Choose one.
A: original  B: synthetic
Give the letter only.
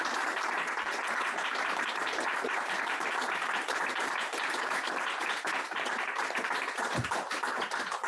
B